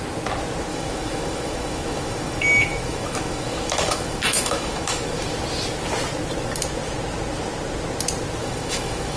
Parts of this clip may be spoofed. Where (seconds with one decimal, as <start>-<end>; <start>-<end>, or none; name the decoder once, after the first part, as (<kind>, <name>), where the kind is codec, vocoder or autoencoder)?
0.7-5.2 (autoencoder, DAC-VAE); 8.4-9.2